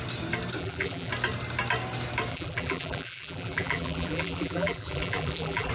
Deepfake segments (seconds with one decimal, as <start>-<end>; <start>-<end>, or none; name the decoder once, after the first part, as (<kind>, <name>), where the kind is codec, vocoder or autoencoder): 0.6-1.1 (vocoder, BigVGAN v2); 2.3-5.7